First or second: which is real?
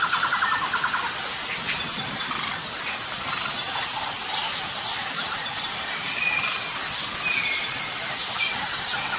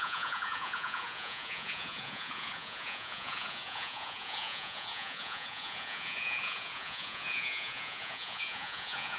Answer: first